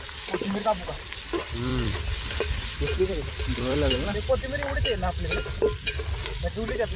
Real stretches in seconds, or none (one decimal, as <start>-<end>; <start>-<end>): 0.0-1.7; 4.3-7.0